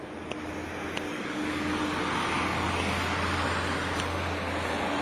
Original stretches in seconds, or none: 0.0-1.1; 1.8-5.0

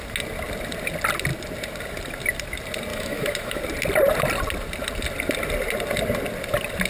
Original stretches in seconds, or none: 0.0-2.9; 3.6-6.9

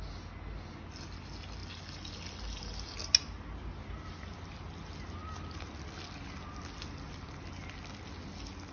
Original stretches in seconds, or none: 0.0-8.7

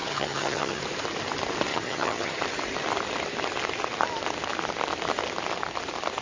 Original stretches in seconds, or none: 0.8-1.7; 2.4-6.2

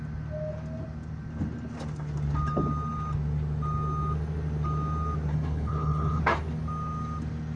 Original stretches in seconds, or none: 0.0-5.3; 6.2-7.6

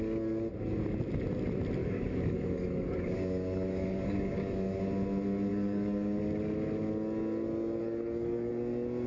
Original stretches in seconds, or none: 0.0-1.8; 4.8-5.5; 6.2-7.8; 8.5-9.1

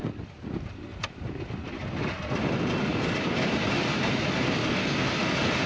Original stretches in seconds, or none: 0.0-2.9; 3.6-5.7

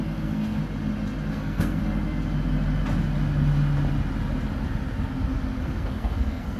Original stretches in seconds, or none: 0.6-1.3; 1.8-5.6